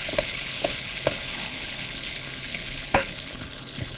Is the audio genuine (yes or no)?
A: no